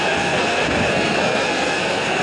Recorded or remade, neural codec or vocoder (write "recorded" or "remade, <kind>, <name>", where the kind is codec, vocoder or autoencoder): remade, codec, SNAC